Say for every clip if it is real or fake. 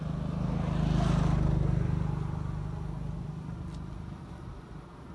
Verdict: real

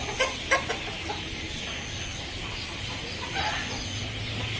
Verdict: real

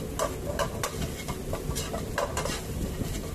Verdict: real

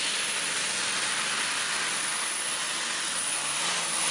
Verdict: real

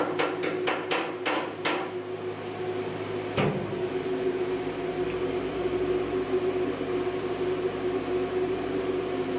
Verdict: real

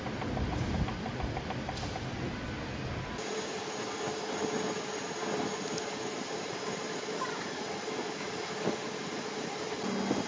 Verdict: real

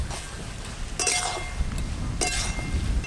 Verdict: real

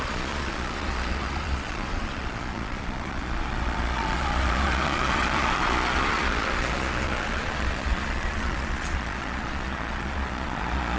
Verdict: fake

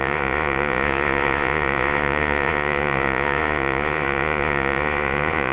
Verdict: fake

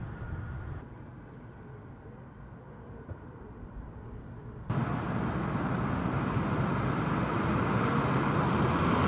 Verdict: real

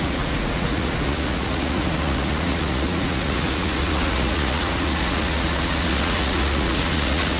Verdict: fake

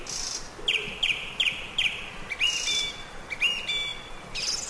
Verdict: real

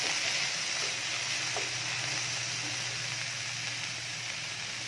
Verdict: real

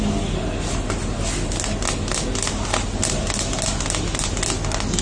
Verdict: real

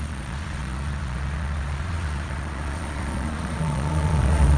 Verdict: fake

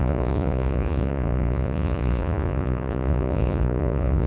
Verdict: fake